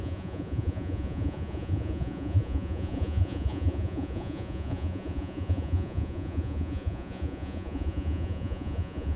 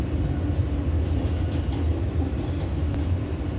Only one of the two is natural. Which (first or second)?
second